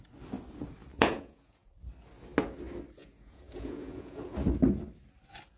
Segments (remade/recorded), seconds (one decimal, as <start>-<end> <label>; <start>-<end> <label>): 0.0-0.9 recorded; 0.9-1.7 remade; 1.7-3.0 recorded; 3.0-4.3 remade; 4.3-5.6 recorded